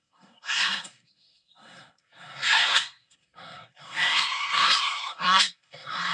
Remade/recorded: remade